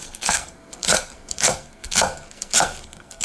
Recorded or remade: remade